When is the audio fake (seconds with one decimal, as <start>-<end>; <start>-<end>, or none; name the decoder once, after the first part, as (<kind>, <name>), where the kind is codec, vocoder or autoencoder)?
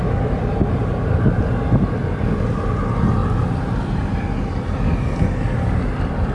none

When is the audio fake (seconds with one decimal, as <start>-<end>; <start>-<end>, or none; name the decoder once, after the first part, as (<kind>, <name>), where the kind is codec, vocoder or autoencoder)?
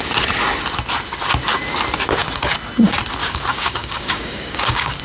3.2-5.0 (codec, DAC)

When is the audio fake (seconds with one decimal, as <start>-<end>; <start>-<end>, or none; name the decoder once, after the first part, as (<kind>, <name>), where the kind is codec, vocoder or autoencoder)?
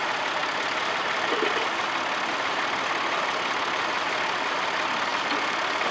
5.1-5.9 (vocoder, BigVGAN v2)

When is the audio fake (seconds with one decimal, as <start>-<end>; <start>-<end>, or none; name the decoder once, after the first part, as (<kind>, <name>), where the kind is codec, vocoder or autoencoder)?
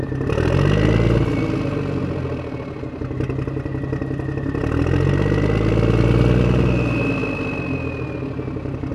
none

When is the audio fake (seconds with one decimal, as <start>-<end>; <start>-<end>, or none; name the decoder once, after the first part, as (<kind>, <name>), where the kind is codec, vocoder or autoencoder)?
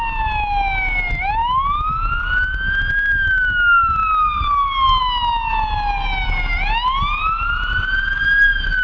none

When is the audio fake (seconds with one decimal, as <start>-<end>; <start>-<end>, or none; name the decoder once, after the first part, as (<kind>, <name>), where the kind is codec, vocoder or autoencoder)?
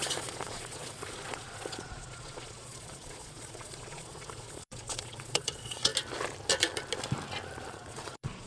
0.0-5.9 (vocoder, Vocos); 7.7-8.5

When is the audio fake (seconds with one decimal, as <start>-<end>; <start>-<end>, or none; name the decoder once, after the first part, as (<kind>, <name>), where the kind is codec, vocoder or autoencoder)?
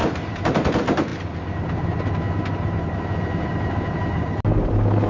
0.0-0.7 (vocoder, BigVGAN v2)